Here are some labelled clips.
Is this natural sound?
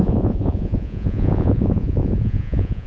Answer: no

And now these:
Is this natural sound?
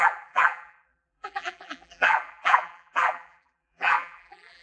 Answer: no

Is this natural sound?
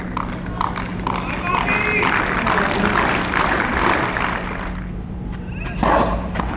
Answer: yes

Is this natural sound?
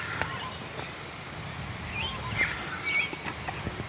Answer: yes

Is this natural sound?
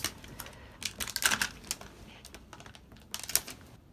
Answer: yes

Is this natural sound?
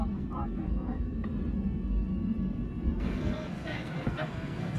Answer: no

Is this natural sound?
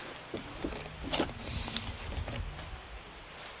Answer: yes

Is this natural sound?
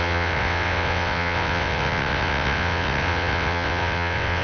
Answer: no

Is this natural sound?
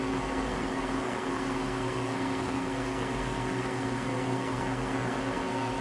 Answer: no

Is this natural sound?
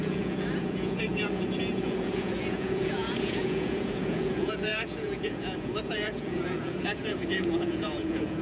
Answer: no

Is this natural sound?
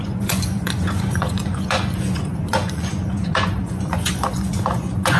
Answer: no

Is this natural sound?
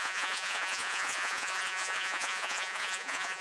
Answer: no